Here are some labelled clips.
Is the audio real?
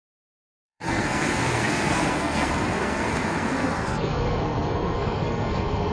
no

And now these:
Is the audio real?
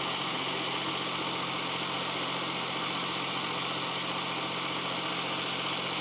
yes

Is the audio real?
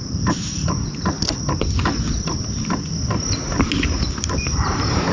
yes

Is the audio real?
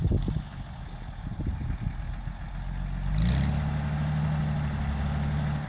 yes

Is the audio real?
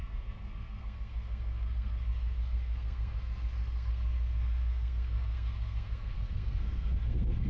no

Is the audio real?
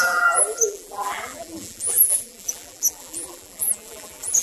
no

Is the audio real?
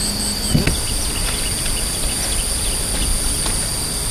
yes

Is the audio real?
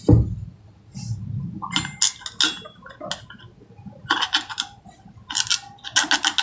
yes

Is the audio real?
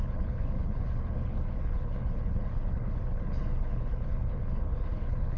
no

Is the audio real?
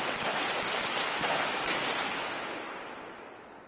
yes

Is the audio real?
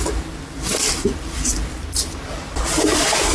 no